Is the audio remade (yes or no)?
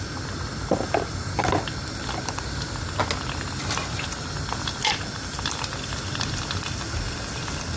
no